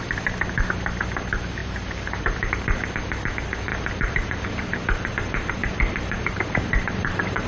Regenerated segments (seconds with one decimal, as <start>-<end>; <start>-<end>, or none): 1.6-2.5; 3.7-7.5